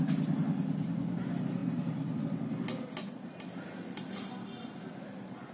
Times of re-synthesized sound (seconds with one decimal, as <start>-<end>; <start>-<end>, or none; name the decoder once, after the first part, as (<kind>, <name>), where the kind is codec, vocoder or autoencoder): 1.6-2.2 (vocoder, BigVGAN v2)